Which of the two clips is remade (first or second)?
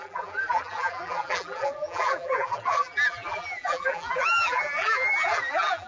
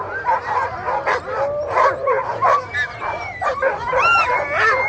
first